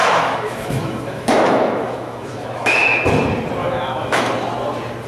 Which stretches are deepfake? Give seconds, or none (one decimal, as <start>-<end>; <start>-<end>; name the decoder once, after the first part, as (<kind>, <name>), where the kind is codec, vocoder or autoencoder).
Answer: 0.0-3.0 (autoencoder, DAC-VAE); 3.6-4.3